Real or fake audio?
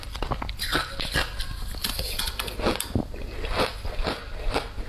real